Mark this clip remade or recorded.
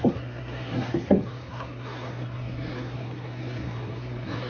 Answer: remade